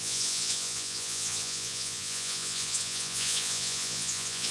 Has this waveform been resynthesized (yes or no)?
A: yes